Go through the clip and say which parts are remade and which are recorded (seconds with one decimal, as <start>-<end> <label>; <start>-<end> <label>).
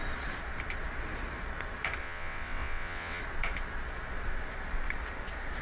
0.0-2.0 recorded; 2.0-3.2 remade; 3.2-5.6 recorded